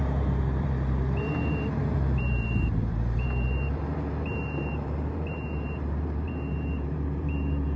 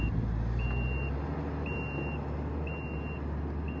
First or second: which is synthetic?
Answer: first